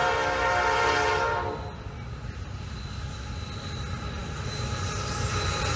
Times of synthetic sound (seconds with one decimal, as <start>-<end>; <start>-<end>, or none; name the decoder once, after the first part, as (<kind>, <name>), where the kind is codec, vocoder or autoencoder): none